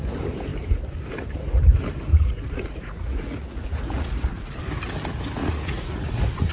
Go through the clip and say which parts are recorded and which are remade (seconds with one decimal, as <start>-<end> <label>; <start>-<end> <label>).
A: 0.0-2.1 recorded; 2.1-4.6 remade; 4.6-5.4 recorded; 5.4-6.5 remade